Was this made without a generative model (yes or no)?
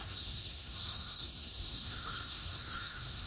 no